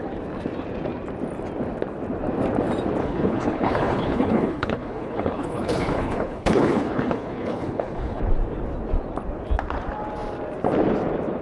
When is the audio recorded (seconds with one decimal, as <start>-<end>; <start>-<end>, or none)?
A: 0.0-3.0; 8.2-11.4